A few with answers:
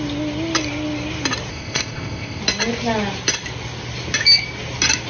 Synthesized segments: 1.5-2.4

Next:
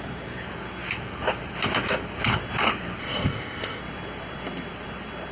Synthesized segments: 3.0-3.8

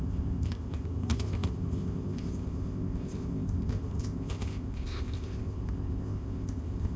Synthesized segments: 0.0-7.0

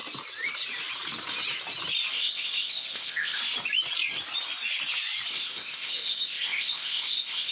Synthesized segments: 2.1-3.4; 5.3-7.5

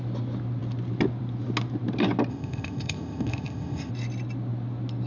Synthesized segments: 2.3-3.9

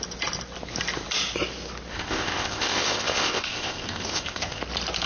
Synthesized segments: 1.9-4.6

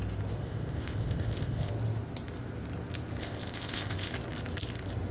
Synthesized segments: 0.4-1.7; 3.2-4.1

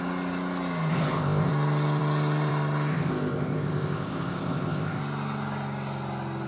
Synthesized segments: 0.9-1.5; 2.9-5.0